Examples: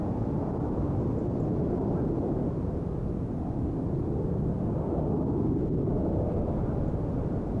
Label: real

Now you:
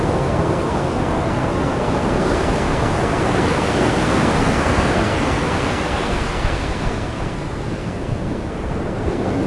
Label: fake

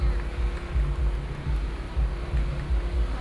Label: real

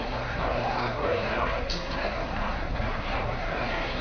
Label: fake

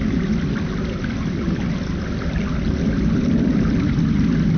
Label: real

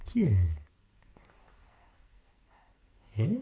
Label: fake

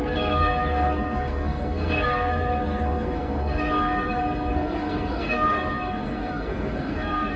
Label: fake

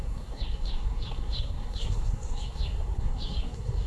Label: fake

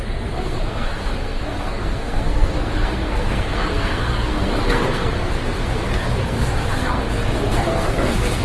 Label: fake